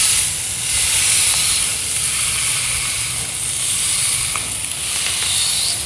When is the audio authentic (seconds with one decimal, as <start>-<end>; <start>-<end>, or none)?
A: 0.0-5.9